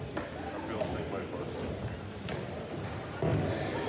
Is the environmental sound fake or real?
real